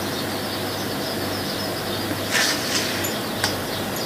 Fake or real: real